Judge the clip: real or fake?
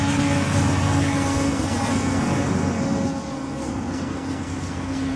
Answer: fake